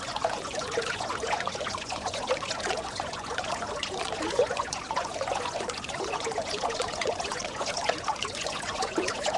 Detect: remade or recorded remade